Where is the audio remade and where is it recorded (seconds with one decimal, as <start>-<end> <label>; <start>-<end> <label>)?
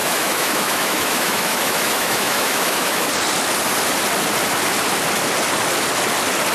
0.0-3.1 remade; 3.1-6.5 recorded